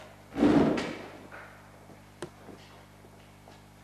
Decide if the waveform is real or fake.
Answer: real